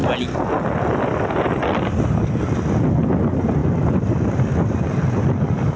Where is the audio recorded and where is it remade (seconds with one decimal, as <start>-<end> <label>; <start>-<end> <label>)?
0.0-5.8 recorded